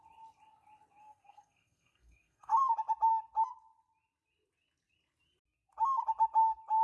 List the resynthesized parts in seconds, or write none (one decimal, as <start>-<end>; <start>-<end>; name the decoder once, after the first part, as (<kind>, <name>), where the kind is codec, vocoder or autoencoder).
1.0-2.6 (codec, SNAC)